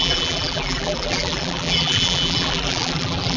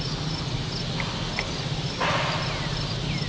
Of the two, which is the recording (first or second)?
second